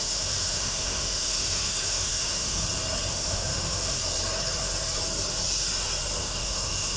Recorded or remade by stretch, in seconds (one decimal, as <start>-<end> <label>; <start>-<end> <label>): 0.0-2.6 remade; 2.6-3.1 recorded; 3.1-4.0 remade; 4.0-6.2 recorded; 6.2-7.0 remade